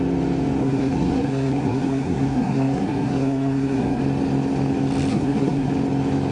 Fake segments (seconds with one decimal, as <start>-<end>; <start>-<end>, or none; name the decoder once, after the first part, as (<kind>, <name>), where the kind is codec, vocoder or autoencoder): 0.6-4.0 (codec, SNAC); 5.1-5.7